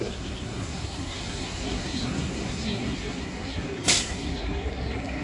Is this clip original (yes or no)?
no